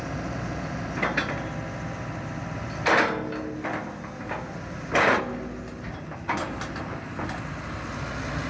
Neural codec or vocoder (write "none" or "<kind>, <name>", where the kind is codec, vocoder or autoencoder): none